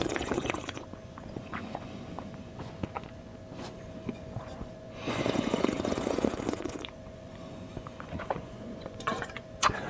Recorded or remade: remade